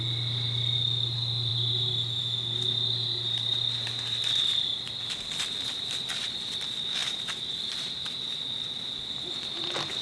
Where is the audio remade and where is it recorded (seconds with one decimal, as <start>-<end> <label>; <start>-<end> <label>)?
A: 0.0-10.0 recorded